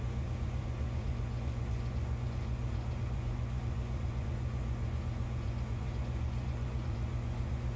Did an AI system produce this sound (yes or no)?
yes